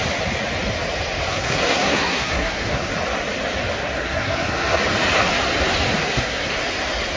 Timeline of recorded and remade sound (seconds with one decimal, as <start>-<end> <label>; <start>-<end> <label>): 0.0-1.3 recorded; 1.3-2.9 remade; 2.9-3.8 recorded; 3.8-4.8 remade; 4.8-6.0 recorded; 6.0-6.5 remade; 6.5-7.2 recorded